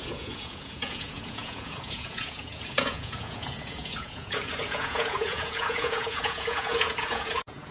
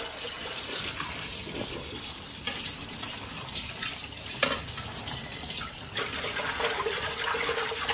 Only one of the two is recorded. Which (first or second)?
second